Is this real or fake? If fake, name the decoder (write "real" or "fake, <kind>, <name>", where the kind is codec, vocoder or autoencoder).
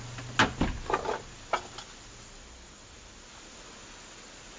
real